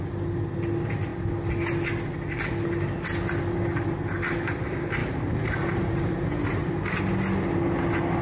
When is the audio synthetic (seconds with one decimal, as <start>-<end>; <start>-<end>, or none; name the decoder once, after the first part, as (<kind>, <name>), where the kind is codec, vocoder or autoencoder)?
5.0-7.0 (vocoder, BigVGAN v2)